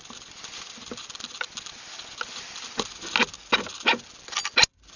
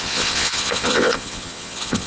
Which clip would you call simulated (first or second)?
second